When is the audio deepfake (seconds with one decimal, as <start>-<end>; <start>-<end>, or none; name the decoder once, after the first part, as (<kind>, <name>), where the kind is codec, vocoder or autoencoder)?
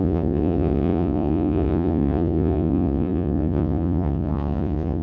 0.0-5.0 (vocoder, Vocos)